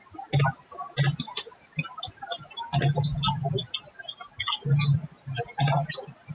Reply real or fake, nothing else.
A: real